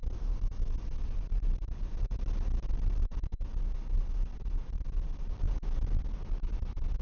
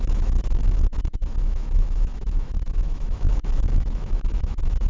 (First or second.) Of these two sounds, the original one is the first